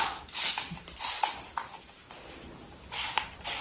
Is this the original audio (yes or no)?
yes